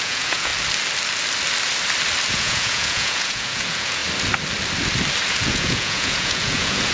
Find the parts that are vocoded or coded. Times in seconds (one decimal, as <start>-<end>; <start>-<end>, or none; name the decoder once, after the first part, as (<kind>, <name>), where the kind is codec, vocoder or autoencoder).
0.0-0.5 (vocoder, Vocos); 2.3-4.0; 5.3-6.9